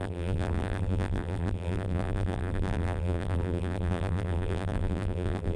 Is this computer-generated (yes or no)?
yes